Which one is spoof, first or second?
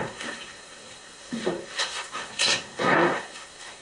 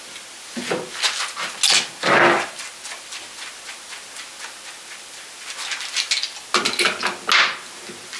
first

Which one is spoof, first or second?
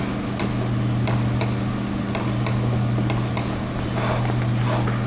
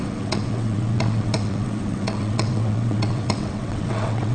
second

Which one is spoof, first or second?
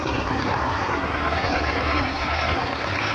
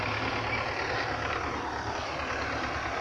first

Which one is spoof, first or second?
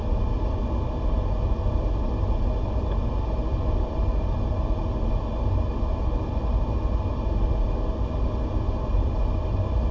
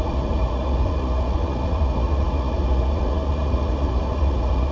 second